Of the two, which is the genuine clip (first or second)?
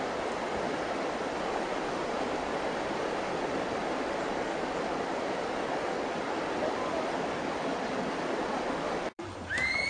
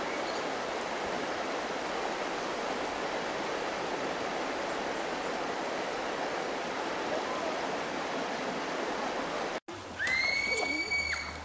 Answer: second